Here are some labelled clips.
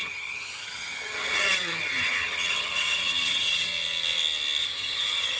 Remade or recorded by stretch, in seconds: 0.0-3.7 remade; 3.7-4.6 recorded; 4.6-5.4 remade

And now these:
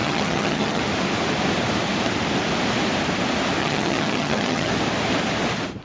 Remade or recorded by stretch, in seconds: 0.0-0.8 remade; 0.8-3.6 recorded; 3.6-4.7 remade; 4.7-5.8 recorded

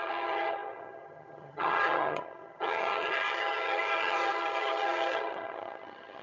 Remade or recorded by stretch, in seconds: 0.0-6.2 remade

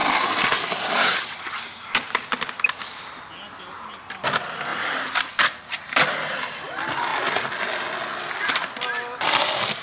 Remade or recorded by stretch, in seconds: 0.0-9.8 recorded

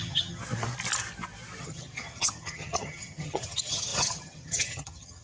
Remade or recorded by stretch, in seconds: 0.0-0.4 remade; 0.4-1.6 recorded; 1.6-5.2 remade

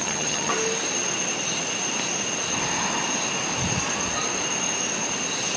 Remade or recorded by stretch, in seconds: 0.0-0.5 remade; 0.5-5.6 recorded

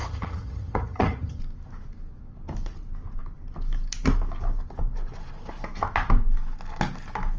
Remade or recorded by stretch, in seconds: 0.0-1.4 remade; 1.4-7.4 recorded